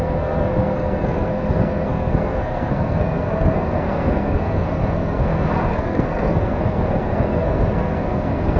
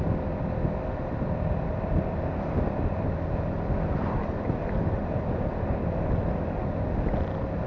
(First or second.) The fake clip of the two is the first